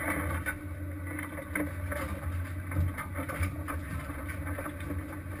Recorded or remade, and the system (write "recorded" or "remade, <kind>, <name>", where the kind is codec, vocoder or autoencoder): recorded